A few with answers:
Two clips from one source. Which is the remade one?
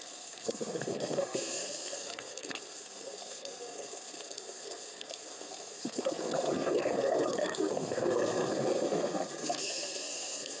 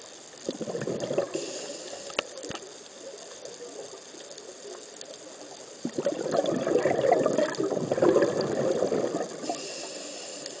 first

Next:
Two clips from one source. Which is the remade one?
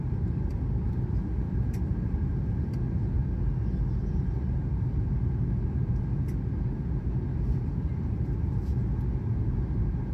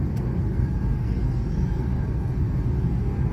second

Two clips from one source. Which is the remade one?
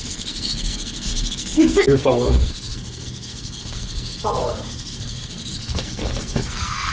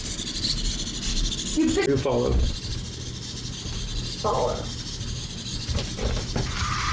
first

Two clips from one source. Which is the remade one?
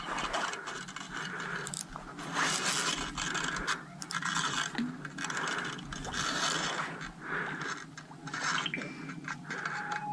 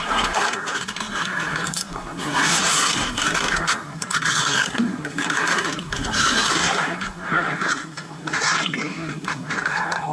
second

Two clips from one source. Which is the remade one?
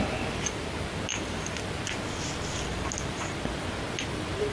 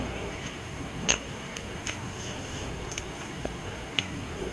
second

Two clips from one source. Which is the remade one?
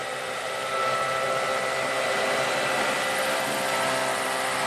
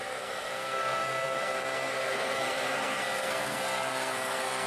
second